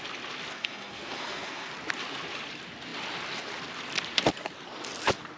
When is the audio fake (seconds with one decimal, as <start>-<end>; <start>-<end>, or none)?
0.5-1.7